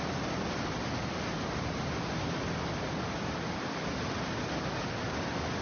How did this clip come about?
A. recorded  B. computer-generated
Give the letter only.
A